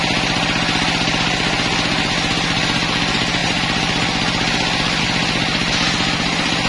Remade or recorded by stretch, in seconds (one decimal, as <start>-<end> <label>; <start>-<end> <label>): 0.0-6.7 recorded